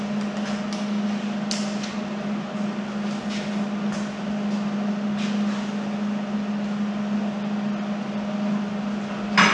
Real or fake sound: real